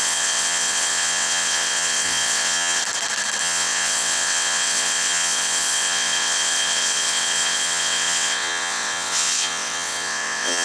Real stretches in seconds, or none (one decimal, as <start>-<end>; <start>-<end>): 2.8-3.4